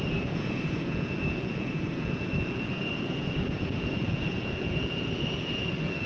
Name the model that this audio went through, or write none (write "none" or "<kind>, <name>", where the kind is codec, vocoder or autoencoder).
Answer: vocoder, Vocos